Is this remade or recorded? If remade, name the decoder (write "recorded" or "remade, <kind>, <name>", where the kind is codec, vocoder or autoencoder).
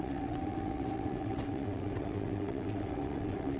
remade, vocoder, WaveNeXt